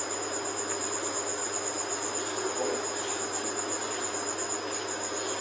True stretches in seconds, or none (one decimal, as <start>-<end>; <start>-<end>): 0.0-5.4